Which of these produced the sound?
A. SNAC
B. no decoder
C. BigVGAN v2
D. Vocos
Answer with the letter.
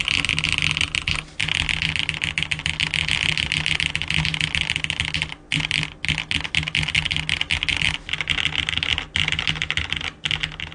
B